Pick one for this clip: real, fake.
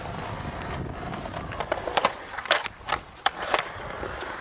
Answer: real